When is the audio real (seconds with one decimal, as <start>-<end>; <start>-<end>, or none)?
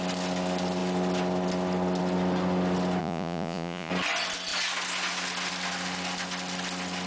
0.0-3.0; 3.9-7.1